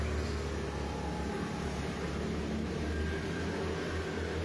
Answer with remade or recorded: recorded